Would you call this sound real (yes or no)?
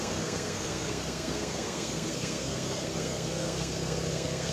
no